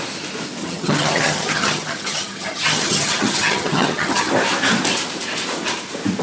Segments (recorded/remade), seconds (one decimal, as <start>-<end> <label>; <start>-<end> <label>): 0.0-0.6 recorded; 0.6-4.3 remade; 4.3-6.2 recorded